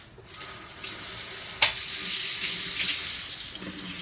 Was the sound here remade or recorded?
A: recorded